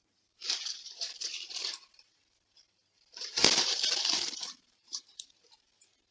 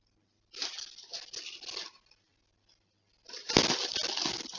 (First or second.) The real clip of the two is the second